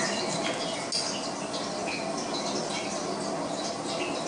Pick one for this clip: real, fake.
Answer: real